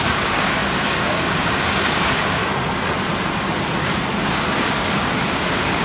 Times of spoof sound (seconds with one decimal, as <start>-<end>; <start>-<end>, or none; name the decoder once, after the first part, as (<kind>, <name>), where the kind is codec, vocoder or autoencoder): 0.0-2.4 (codec, DAC); 4.5-5.8